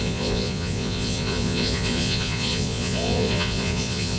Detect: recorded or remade remade